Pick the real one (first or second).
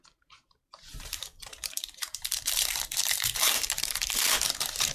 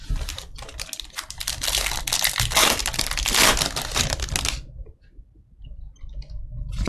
second